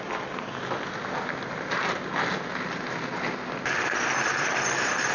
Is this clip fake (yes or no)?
no